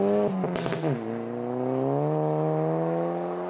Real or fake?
real